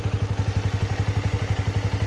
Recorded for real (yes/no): yes